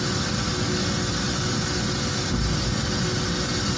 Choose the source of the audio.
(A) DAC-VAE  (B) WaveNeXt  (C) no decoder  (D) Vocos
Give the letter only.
C